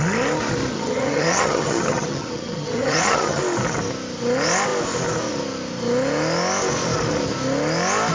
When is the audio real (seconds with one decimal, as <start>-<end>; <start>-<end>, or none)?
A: 0.0-0.7; 3.4-8.1